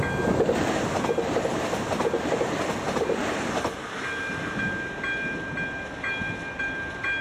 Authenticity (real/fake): real